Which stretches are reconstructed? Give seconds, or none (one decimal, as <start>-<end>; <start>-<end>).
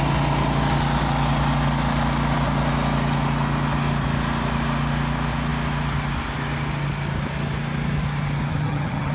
8.5-9.1